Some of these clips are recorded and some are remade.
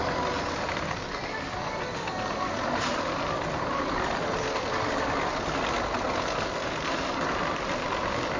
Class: recorded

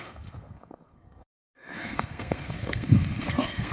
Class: remade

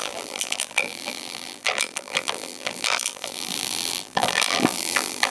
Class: remade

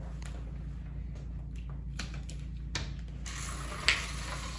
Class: recorded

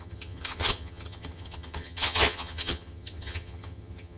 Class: remade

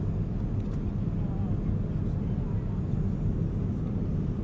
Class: recorded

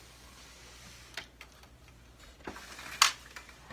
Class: recorded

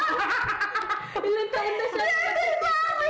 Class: recorded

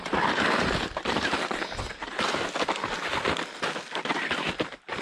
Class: recorded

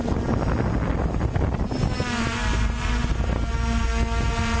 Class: recorded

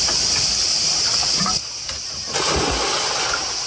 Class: recorded